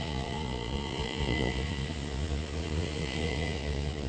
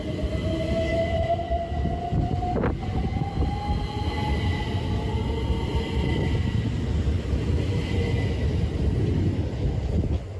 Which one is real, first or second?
second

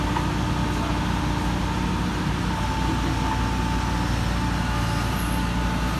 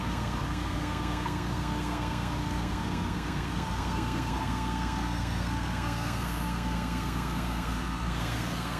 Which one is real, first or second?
first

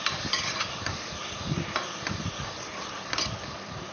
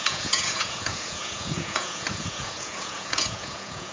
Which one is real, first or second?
first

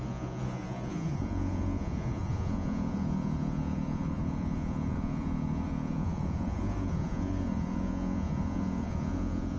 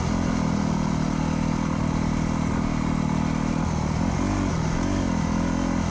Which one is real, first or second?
second